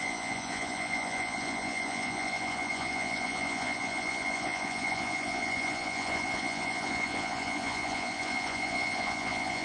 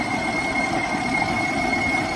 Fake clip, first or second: first